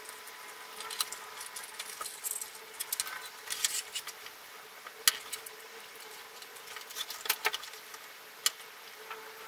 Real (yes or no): yes